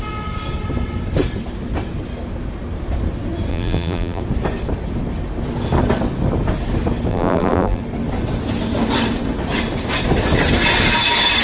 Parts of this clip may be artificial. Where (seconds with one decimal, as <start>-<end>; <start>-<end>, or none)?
3.5-4.2; 7.1-7.8